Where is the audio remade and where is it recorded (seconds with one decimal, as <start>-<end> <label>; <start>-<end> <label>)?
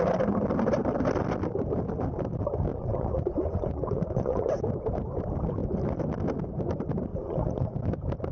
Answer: 0.0-2.7 recorded; 2.7-4.6 remade; 4.6-7.1 recorded; 7.1-7.8 remade; 7.8-8.3 recorded